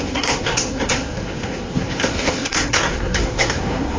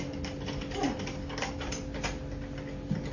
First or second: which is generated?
first